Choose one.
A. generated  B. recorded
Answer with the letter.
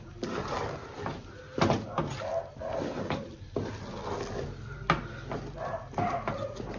B